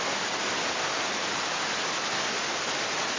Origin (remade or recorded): recorded